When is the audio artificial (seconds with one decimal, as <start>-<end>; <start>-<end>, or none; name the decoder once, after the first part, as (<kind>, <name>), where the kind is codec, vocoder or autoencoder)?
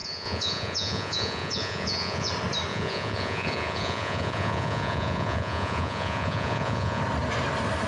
0.0-2.3 (vocoder, Vocos); 2.7-7.0